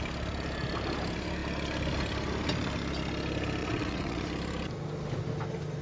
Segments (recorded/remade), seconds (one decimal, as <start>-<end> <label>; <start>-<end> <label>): 0.0-3.6 recorded; 3.6-4.2 remade; 4.2-5.8 recorded